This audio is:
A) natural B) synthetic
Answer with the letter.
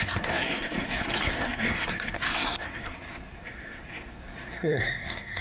B